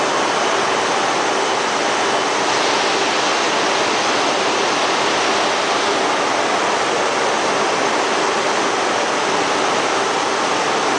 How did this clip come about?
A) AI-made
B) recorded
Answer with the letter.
B